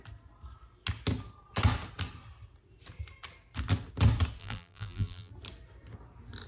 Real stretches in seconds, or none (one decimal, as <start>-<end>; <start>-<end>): 0.0-4.4; 5.3-6.5

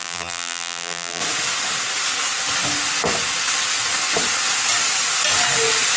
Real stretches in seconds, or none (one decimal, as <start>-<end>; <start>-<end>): 1.2-6.0